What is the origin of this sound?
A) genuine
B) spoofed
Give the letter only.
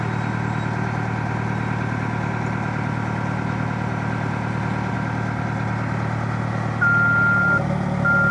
A